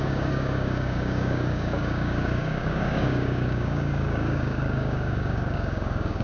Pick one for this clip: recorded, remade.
remade